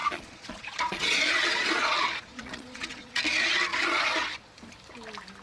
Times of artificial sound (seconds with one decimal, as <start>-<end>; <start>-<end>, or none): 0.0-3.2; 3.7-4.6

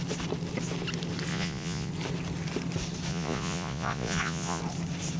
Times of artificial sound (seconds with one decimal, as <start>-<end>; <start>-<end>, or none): 1.3-1.9; 3.1-4.6

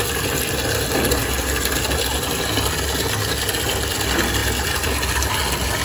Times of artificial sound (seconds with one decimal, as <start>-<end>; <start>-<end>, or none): none

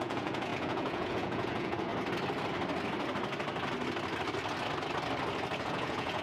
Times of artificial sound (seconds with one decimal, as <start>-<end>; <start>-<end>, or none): 0.0-1.9; 5.6-6.2

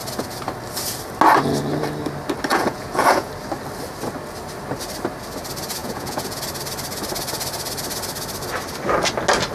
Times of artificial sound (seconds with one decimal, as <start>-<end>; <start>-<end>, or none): 2.5-3.3; 5.8-6.4

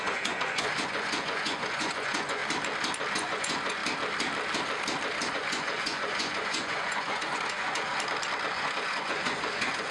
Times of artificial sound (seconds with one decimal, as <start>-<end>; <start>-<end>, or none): 0.0-2.4; 3.1-3.8; 5.3-7.9; 8.5-9.9

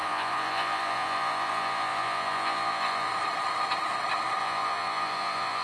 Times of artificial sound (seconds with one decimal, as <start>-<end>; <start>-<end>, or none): 0.0-3.1; 4.4-5.6

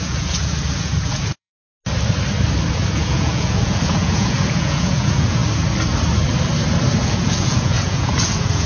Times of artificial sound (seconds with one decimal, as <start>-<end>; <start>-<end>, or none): 0.0-1.5; 2.7-5.4; 7.0-8.7